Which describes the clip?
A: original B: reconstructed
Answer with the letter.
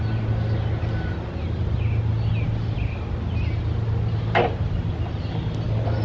A